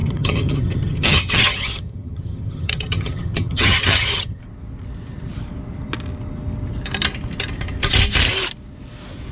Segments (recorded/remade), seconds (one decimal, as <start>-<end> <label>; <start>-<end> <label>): 0.0-4.4 remade; 4.4-9.3 recorded